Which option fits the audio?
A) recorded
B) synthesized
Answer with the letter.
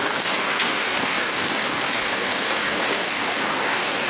B